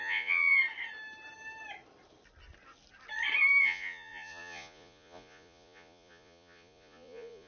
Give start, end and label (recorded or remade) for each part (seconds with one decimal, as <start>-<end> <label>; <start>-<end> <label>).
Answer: 0.0-0.6 remade; 0.6-3.6 recorded; 3.6-7.5 remade